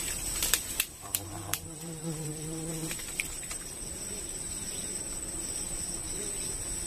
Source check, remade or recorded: remade